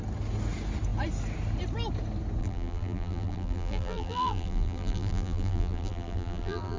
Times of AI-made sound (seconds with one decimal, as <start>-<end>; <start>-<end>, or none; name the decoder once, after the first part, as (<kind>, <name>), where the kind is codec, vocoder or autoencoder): 2.4-6.8 (vocoder, BigVGAN v2)